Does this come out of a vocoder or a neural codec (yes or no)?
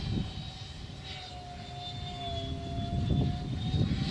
no